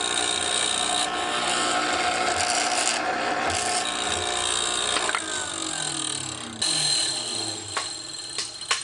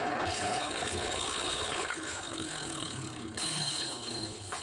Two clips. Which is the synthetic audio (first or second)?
second